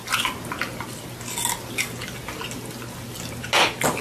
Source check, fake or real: real